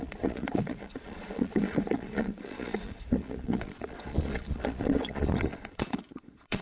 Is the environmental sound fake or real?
fake